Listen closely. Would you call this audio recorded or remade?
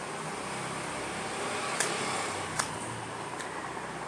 recorded